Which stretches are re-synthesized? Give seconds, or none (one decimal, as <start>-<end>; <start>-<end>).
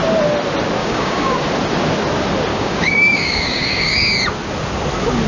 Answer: 0.8-1.4; 2.5-4.0